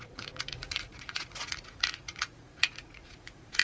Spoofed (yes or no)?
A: yes